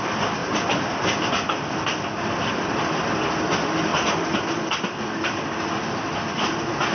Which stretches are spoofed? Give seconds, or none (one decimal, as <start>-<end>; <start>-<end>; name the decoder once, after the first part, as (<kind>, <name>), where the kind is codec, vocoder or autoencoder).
none

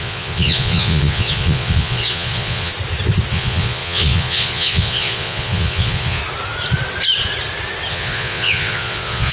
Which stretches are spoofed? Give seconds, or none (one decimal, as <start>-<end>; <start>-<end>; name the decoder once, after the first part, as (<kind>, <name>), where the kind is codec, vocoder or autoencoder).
0.0-2.7 (vocoder, Vocos); 3.3-6.2; 7.9-9.3

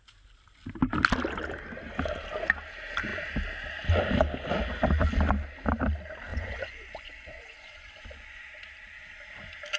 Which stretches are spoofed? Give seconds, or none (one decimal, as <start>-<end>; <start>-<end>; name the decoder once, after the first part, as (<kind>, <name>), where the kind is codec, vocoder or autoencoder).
6.3-8.5 (vocoder, Vocos)

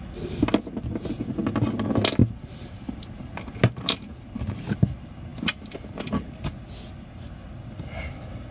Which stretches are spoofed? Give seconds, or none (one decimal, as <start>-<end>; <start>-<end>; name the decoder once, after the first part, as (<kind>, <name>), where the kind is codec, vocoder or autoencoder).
none

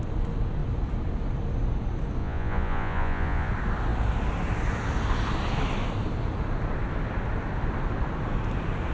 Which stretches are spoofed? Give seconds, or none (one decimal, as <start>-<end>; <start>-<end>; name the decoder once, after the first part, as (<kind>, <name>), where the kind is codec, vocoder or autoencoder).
2.2-3.5 (vocoder, Vocos)

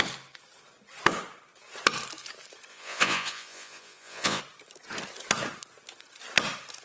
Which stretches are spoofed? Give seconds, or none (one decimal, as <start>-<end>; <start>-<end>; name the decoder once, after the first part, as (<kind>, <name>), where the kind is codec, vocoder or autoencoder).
2.7-4.4 (vocoder, Vocos)